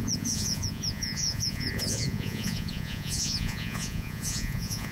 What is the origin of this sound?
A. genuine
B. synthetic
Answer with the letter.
B